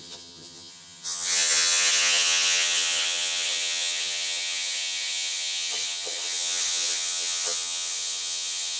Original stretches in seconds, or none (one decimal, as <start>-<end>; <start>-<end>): none